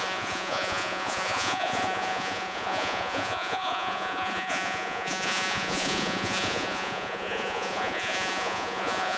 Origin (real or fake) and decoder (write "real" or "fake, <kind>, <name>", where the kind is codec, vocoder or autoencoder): fake, vocoder, Vocos